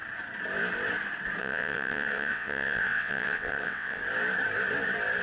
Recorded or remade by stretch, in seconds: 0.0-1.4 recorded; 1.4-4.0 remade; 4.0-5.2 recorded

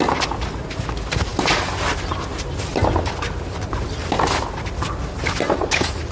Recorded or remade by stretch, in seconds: 0.0-6.1 recorded

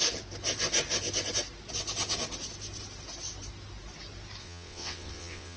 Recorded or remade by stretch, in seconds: 0.0-4.4 recorded; 4.4-5.6 remade

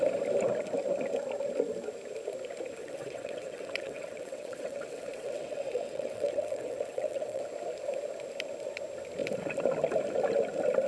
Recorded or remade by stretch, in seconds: 0.0-2.8 recorded; 2.8-7.4 remade; 7.4-10.9 recorded

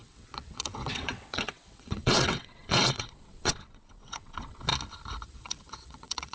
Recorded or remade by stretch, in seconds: 0.0-4.7 remade; 4.7-5.3 recorded; 5.3-6.3 remade